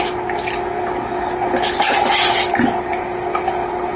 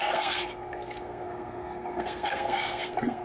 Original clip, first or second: first